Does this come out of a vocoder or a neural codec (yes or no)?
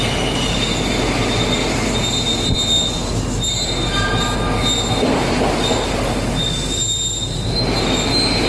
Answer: no